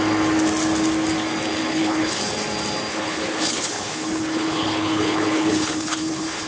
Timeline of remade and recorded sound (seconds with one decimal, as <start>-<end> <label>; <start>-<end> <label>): 0.0-1.7 recorded; 1.7-2.2 remade; 2.2-2.9 recorded; 2.9-6.5 remade